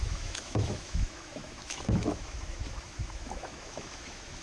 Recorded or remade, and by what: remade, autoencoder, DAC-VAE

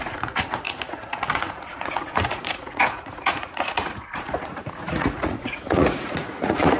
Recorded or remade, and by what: remade, vocoder, Vocos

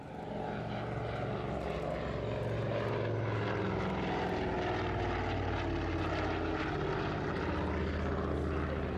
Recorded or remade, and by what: recorded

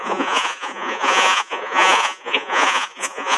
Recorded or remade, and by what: remade, vocoder, Vocos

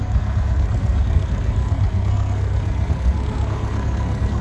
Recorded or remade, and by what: remade, codec, SNAC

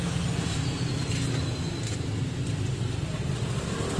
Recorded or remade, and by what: recorded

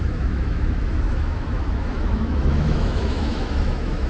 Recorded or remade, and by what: remade, autoencoder, DAC-VAE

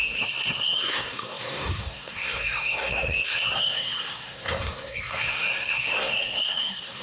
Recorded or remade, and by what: remade, codec, SNAC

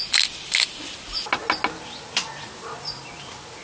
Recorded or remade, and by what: recorded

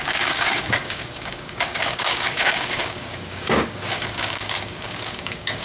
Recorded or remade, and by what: remade, codec, DAC